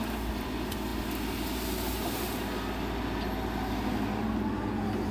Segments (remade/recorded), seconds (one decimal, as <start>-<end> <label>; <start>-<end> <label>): 0.0-5.1 recorded